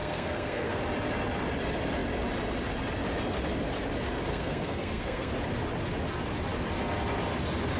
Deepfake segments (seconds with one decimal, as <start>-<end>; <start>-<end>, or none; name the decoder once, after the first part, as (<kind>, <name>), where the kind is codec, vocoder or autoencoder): 0.0-0.8 (codec, SNAC); 4.3-5.3